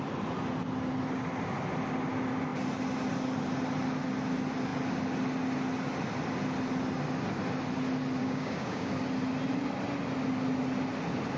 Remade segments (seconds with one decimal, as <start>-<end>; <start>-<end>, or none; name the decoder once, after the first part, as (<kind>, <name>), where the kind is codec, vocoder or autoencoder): 8.2-8.9 (codec, DAC)